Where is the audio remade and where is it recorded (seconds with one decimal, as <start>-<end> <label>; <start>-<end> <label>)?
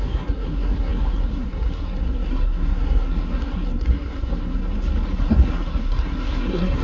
0.0-4.6 remade; 4.6-5.2 recorded; 5.2-6.8 remade